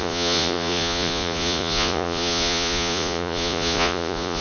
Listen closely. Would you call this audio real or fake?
fake